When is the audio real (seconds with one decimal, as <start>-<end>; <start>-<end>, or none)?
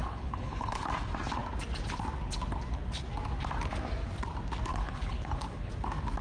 0.9-4.7; 5.7-6.2